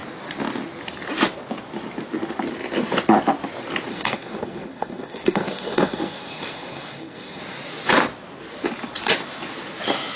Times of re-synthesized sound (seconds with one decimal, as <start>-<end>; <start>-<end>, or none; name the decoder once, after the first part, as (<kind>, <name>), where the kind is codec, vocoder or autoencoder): 3.9-7.4 (codec, SNAC)